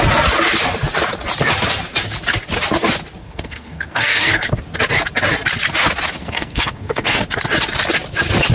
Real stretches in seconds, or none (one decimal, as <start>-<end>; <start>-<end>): 0.0-3.2; 4.5-6.2; 7.2-8.5